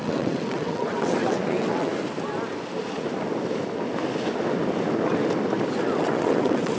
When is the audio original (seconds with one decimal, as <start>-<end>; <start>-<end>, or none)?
1.9-6.0